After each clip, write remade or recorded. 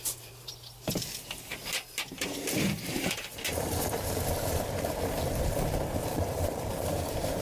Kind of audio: remade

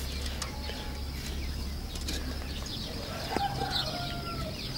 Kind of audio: recorded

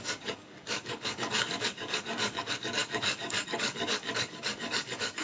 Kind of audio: remade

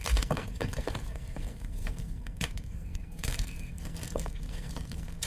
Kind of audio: remade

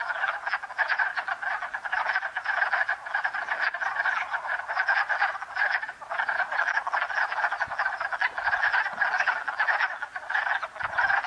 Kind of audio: recorded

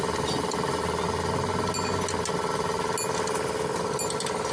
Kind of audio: recorded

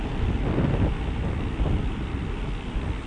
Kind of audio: recorded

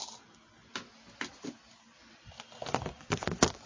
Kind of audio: recorded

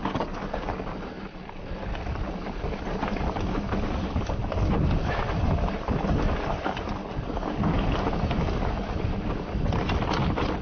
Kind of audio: recorded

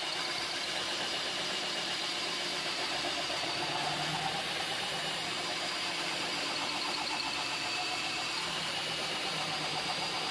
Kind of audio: remade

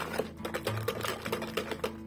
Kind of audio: recorded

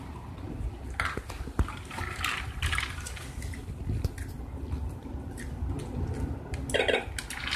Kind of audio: recorded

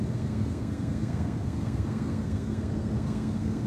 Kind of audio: remade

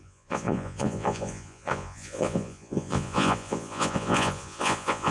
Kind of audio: remade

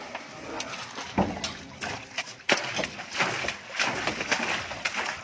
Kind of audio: recorded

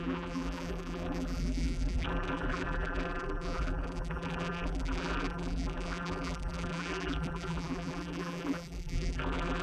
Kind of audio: remade